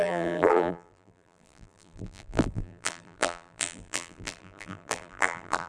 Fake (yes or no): yes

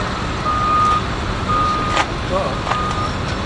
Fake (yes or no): no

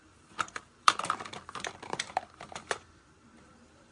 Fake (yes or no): yes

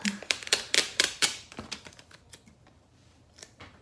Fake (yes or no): yes